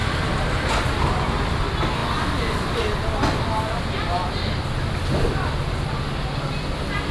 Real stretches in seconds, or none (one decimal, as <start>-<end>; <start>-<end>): 0.7-7.1